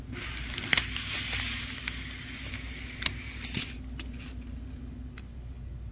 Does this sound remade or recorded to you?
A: recorded